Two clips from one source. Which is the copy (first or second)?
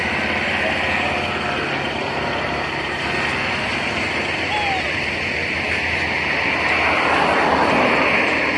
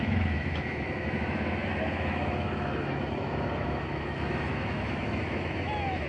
second